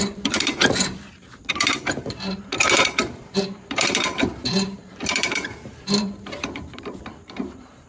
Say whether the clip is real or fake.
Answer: fake